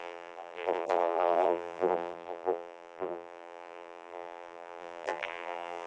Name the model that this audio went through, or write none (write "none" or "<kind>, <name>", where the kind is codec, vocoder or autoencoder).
vocoder, BigVGAN v2